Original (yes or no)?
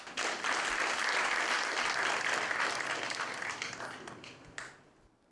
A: yes